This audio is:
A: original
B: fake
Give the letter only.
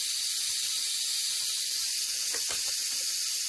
A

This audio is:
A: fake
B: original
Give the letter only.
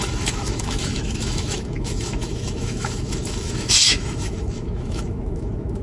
A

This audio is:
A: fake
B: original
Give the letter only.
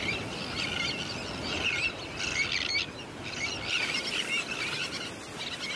B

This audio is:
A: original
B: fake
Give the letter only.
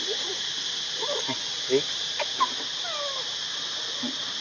A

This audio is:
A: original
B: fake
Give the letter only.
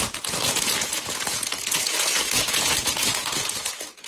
B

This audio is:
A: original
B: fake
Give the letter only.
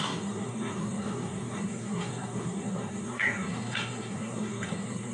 B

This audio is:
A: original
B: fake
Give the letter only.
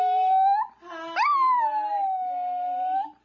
A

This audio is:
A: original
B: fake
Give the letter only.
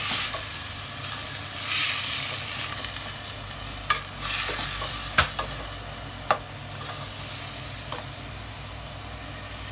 A